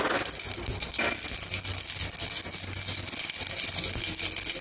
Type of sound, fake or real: real